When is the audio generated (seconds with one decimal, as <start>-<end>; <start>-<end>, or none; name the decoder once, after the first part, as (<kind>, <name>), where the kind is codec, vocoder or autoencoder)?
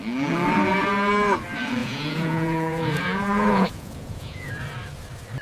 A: 1.8-4.5 (vocoder, Vocos)